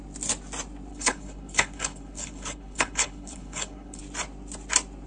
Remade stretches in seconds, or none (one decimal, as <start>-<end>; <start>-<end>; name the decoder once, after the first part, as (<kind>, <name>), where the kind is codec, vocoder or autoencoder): 0.9-4.0 (codec, HILCodec)